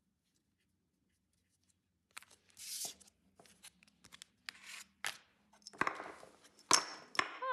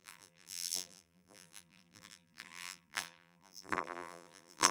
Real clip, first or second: first